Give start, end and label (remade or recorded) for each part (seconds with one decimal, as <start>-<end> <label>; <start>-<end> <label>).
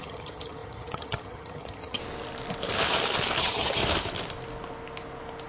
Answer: 0.0-2.0 remade; 2.0-3.4 recorded; 3.4-3.8 remade; 3.8-5.5 recorded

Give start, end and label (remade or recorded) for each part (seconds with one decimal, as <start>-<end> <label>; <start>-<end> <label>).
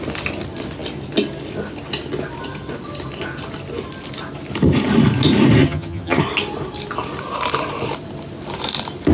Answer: 0.0-5.6 recorded; 5.6-6.2 remade; 6.2-9.1 recorded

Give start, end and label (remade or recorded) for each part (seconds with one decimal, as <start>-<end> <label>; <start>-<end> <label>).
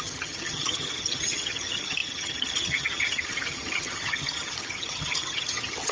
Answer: 0.0-5.9 remade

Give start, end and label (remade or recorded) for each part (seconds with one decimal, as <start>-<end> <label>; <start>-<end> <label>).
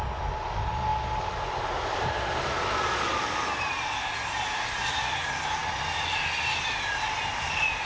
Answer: 0.0-7.9 recorded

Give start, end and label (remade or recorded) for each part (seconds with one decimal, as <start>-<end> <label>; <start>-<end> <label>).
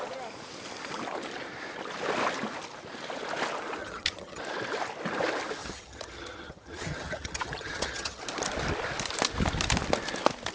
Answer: 0.0-3.8 recorded; 3.8-4.4 remade; 4.4-5.6 recorded; 5.6-8.2 remade; 8.2-10.5 recorded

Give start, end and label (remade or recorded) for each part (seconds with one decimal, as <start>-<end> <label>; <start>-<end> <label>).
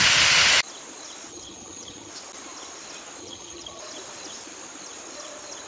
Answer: 0.0-1.3 recorded; 1.3-2.1 remade; 2.1-3.2 recorded; 3.2-3.8 remade; 3.8-5.7 recorded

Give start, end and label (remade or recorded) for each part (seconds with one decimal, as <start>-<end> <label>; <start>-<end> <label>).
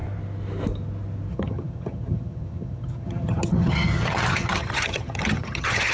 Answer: 0.0-1.3 recorded; 1.3-5.9 remade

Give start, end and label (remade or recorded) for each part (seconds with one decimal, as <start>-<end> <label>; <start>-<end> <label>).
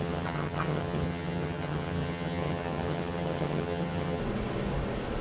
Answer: 0.0-4.2 remade; 4.2-5.2 recorded